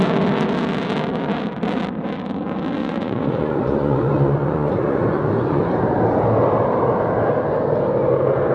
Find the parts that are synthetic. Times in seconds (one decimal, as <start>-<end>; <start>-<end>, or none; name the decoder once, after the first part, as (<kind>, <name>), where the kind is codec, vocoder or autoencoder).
2.8-5.6 (vocoder, Vocos)